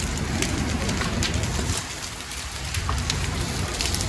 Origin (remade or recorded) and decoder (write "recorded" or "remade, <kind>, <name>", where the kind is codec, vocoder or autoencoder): recorded